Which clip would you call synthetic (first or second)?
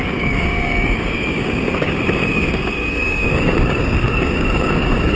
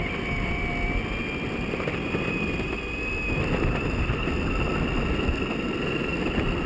first